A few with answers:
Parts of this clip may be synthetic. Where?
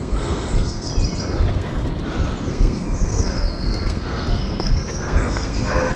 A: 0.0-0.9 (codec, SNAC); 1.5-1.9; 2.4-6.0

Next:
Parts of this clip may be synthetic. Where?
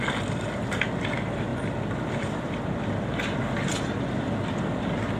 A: none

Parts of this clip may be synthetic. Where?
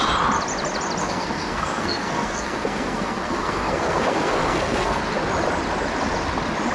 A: 1.0-5.0 (codec, SNAC)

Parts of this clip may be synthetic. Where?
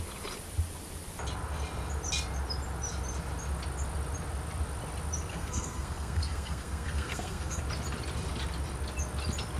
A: 5.3-7.6 (codec, SNAC)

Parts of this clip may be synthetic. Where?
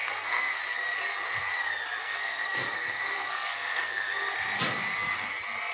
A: 0.0-0.6 (codec, SNAC); 2.0-4.2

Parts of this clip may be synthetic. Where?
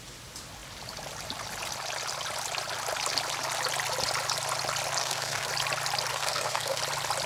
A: 5.0-5.5 (codec, SNAC); 6.1-6.8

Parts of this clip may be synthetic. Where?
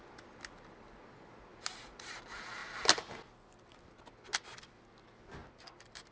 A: none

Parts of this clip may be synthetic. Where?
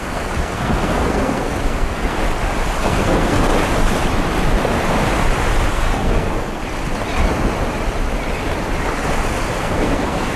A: 0.0-2.2 (codec, SNAC); 2.8-3.5; 5.7-6.6; 9.6-10.4